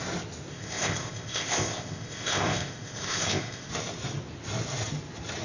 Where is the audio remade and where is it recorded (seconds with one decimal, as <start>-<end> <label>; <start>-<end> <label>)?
0.0-0.5 recorded; 0.5-3.7 remade; 3.7-5.4 recorded